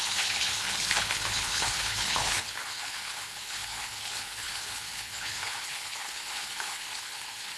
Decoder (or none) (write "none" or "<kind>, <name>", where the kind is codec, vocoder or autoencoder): codec, HILCodec